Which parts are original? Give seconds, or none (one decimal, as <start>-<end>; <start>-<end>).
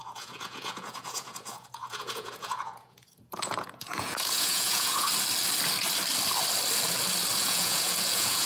5.1-7.4